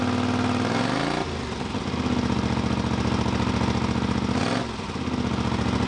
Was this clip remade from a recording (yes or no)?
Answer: no